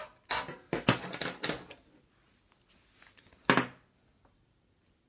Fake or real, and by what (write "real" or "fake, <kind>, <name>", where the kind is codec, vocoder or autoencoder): real